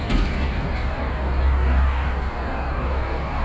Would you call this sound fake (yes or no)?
yes